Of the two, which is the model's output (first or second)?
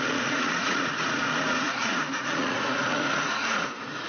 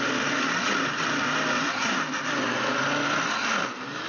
first